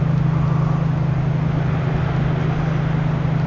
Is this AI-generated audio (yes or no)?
no